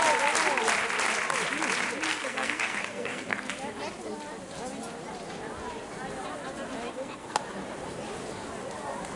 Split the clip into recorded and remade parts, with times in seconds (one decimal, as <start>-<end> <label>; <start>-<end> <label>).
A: 0.0-2.1 recorded; 2.1-3.5 remade; 3.5-6.9 recorded; 6.9-7.4 remade; 7.4-9.2 recorded